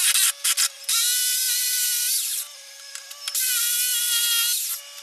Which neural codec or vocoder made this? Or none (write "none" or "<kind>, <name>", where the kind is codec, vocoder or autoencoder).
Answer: none